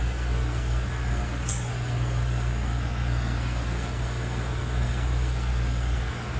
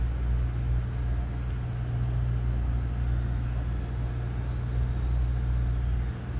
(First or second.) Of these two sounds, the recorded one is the second